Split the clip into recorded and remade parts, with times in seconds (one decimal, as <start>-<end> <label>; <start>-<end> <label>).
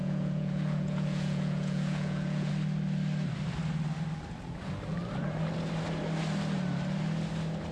0.0-2.5 remade; 2.5-7.7 recorded